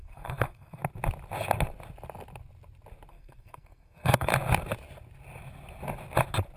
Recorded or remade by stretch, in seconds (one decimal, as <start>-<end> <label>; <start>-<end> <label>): 0.0-0.8 remade; 0.8-3.1 recorded; 3.1-4.3 remade; 4.3-6.6 recorded